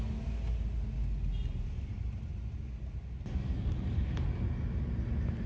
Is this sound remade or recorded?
recorded